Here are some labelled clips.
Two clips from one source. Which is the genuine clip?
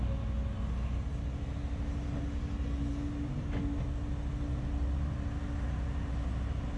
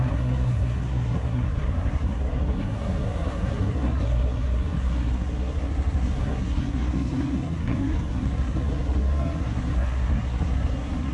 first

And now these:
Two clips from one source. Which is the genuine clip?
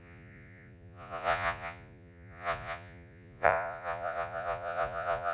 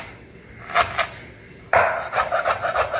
second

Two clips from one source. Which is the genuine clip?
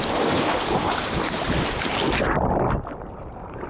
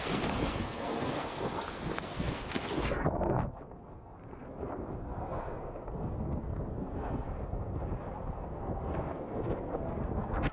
first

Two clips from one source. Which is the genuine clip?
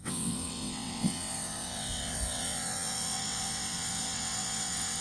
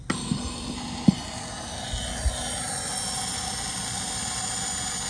second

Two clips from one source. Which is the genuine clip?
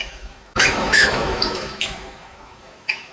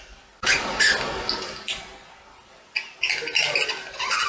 second